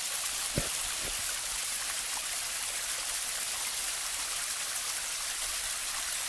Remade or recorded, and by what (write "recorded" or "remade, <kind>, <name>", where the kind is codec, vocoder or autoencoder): recorded